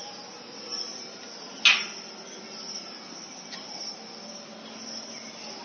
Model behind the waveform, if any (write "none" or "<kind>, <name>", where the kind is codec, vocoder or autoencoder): none